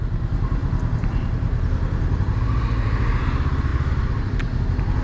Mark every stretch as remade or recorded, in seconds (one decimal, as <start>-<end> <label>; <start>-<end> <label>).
0.0-5.0 recorded